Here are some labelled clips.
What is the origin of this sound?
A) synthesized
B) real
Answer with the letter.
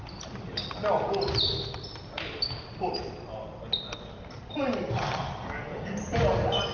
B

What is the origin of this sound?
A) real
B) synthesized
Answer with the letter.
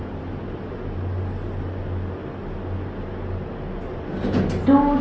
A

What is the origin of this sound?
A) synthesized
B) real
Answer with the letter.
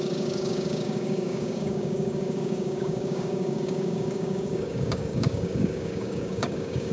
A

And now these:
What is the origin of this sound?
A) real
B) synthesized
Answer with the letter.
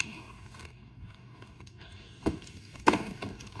B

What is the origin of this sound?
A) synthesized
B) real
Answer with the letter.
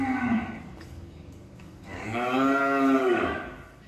A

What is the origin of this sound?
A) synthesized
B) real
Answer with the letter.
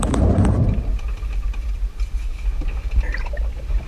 B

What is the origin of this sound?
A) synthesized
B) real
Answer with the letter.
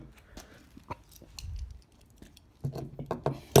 B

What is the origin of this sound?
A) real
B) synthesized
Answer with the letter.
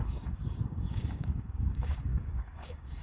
B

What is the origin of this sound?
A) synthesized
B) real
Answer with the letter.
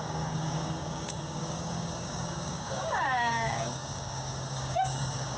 A